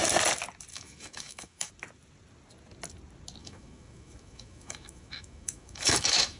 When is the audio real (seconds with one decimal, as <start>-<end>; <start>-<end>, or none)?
0.0-0.7; 1.7-3.4